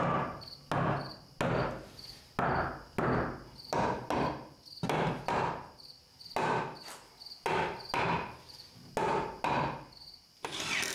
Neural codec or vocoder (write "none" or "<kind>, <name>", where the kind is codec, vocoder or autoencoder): none